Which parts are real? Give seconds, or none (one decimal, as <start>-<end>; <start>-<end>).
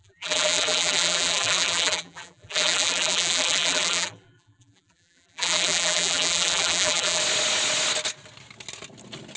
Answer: 7.2-9.4